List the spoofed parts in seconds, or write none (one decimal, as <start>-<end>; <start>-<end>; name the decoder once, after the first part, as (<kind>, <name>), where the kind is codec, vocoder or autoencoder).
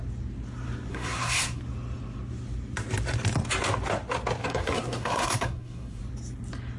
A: 0.9-1.6 (codec, SNAC); 4.4-6.0